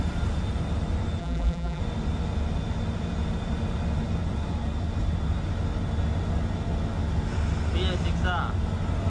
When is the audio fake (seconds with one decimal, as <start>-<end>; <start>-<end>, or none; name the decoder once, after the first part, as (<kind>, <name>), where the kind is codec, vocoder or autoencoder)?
1.2-1.8 (vocoder, BigVGAN v2)